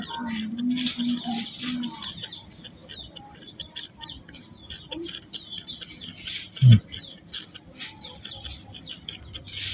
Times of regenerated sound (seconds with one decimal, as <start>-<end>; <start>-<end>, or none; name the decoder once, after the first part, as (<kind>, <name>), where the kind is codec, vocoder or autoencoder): none